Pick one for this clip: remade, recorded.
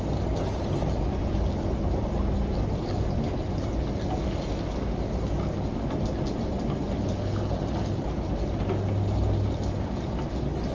recorded